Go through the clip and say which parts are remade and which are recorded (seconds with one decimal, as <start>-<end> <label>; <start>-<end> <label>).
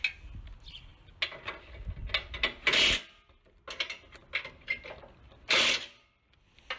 0.0-6.8 recorded